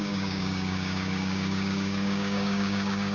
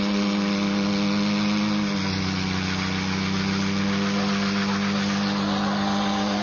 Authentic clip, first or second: second